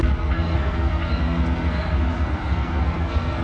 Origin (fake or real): fake